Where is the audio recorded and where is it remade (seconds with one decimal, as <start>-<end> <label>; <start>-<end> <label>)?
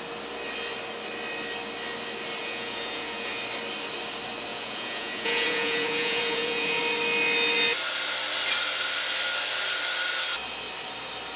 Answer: 0.0-2.4 recorded; 2.4-3.4 remade; 3.4-4.5 recorded; 4.5-6.8 remade; 6.8-11.4 recorded